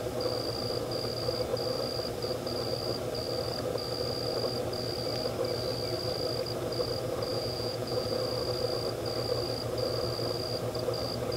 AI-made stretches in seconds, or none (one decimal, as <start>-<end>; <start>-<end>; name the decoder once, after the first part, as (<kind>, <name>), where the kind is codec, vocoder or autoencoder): 7.3-8.2 (vocoder, Vocos)